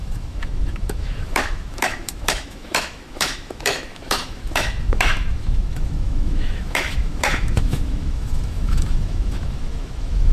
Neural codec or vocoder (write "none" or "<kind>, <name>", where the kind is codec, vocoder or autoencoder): autoencoder, DAC-VAE